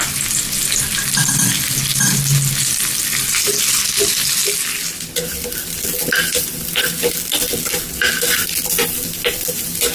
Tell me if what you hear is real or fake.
real